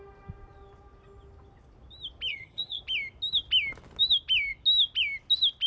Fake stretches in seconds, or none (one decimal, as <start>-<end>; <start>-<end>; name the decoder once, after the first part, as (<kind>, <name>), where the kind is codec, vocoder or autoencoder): 2.3-2.8 (vocoder, HiFi-GAN)